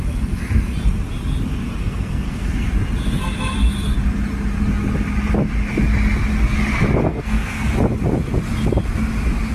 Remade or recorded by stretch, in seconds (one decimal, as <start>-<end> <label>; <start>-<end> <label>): 0.0-1.8 recorded; 1.8-2.7 remade; 2.7-7.0 recorded; 7.0-7.7 remade; 7.7-9.5 recorded